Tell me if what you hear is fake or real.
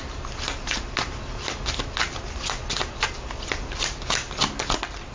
real